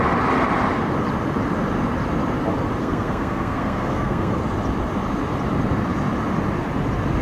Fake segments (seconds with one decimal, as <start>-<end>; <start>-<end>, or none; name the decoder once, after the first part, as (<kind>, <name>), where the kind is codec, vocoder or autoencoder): 2.8-4.4 (codec, SNAC)